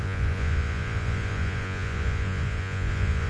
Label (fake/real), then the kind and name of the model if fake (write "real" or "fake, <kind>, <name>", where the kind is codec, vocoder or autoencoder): fake, vocoder, Vocos